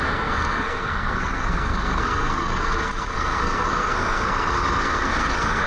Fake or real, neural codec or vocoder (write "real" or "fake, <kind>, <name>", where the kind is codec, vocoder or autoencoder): fake, codec, SNAC